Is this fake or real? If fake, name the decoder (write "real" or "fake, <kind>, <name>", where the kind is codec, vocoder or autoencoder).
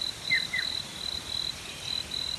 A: real